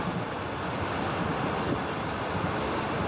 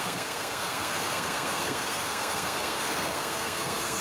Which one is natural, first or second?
first